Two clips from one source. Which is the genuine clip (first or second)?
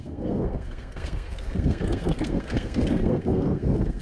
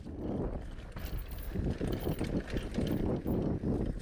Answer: second